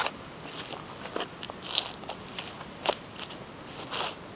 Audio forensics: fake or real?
real